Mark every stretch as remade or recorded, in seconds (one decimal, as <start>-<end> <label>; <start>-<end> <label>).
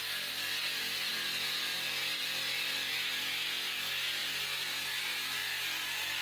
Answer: 0.0-6.2 recorded